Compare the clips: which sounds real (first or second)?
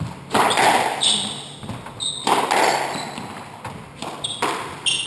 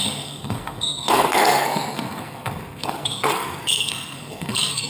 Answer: first